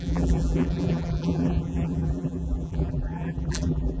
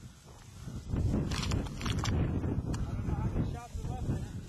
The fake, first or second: first